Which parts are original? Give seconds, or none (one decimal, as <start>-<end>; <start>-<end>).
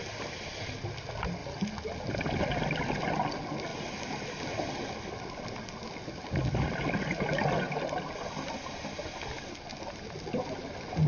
0.0-11.1